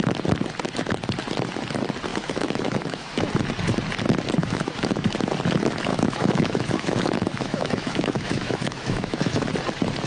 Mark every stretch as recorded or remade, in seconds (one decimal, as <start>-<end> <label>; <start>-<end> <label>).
0.0-2.1 recorded; 2.1-3.3 remade; 3.3-4.4 recorded; 4.4-5.1 remade; 5.1-5.9 recorded; 5.9-9.5 remade; 9.5-10.1 recorded